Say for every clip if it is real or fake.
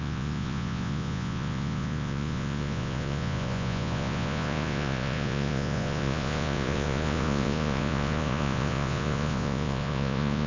fake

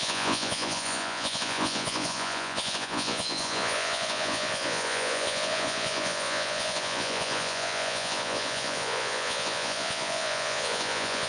fake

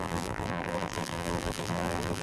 fake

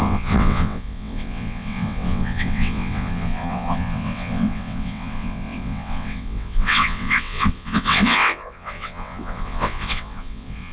fake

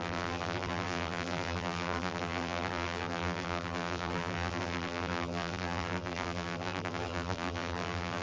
fake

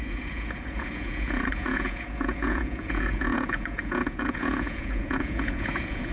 fake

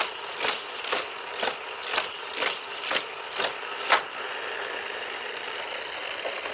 real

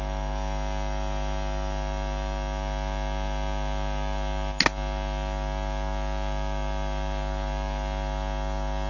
real